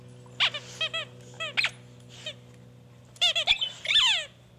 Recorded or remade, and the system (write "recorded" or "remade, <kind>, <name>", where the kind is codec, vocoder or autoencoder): recorded